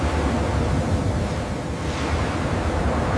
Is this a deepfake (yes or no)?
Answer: no